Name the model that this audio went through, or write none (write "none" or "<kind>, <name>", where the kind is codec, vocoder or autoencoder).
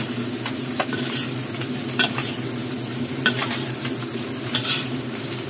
vocoder, BigVGAN v2